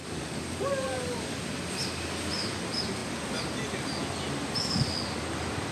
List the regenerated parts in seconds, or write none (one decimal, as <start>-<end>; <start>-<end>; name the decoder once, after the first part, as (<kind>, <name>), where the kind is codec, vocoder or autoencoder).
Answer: 0.0-1.4 (codec, DAC)

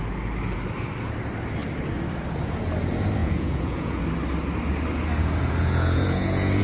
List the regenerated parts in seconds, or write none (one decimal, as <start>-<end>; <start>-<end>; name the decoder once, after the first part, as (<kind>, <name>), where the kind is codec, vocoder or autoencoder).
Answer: 3.2-4.0 (vocoder, Vocos); 5.6-6.6

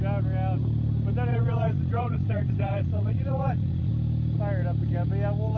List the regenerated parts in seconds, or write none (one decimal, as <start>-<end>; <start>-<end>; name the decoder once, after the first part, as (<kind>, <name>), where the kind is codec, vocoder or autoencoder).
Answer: 1.3-3.9 (vocoder, Vocos)

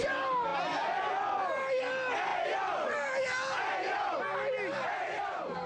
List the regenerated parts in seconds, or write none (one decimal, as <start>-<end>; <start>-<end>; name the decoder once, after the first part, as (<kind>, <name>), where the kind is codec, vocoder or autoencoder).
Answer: none

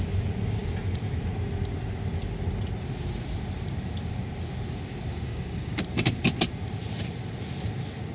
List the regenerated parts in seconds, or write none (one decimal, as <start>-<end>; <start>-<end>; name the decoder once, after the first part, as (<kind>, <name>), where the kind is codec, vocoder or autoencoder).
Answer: 5.1-5.8 (codec, DAC)